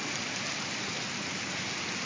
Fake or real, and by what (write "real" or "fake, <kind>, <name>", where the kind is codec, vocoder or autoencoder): fake, vocoder, BigVGAN v2